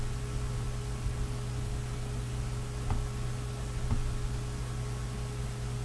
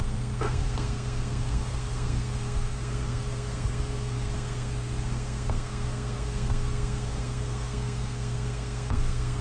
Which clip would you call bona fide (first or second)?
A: first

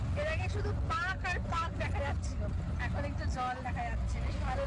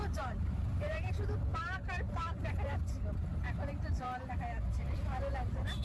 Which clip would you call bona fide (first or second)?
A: first